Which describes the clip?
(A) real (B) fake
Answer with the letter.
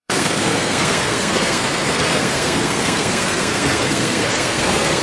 B